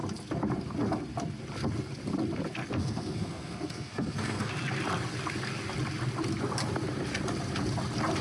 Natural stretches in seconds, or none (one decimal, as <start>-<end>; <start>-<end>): 0.0-2.8; 4.5-8.2